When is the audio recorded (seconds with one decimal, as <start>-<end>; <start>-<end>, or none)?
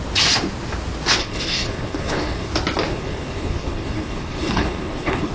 0.0-1.2; 2.5-2.9